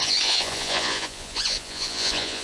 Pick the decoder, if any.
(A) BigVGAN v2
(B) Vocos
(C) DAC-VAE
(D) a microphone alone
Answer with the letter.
B